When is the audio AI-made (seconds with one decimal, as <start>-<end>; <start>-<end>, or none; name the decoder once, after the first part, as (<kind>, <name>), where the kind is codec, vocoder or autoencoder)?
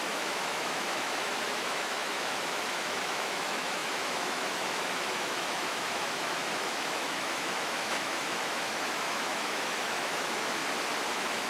0.0-10.6 (autoencoder, DAC-VAE); 11.1-11.5